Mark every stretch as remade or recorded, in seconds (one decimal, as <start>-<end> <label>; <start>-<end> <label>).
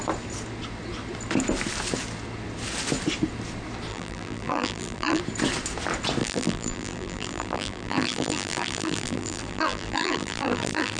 0.0-3.9 recorded; 3.9-5.2 remade; 5.2-6.2 recorded; 6.2-11.0 remade